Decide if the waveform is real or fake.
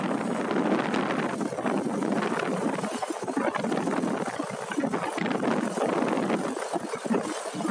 real